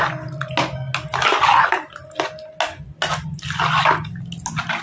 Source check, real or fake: real